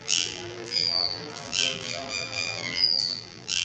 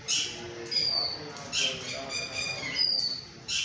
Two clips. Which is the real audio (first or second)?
second